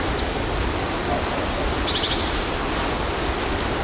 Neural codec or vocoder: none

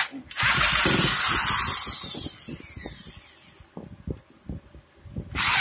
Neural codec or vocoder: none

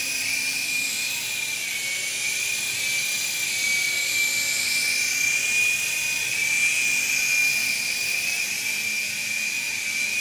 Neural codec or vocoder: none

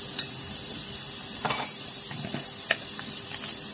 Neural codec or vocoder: vocoder, BigVGAN v2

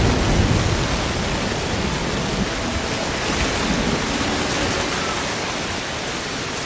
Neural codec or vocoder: none